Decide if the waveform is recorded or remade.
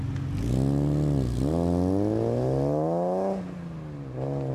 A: recorded